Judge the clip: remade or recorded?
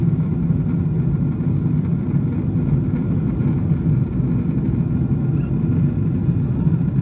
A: recorded